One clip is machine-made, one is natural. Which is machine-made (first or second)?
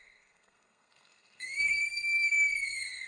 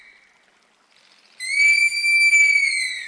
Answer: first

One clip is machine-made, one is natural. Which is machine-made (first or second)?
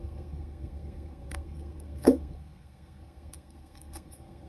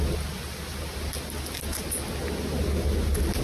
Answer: first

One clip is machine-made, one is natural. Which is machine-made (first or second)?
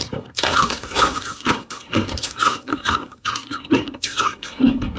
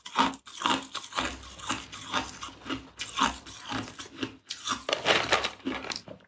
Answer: first